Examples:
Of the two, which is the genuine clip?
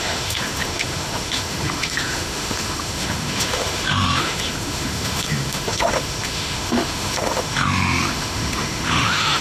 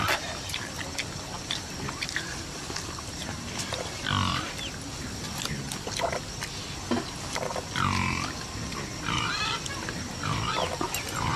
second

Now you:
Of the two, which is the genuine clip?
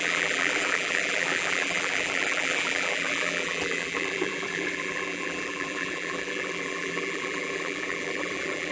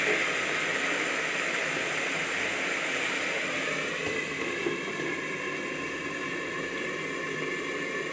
second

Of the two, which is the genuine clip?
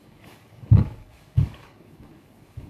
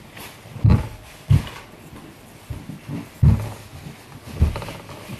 second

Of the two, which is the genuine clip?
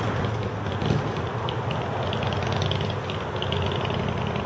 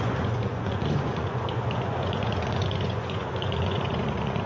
first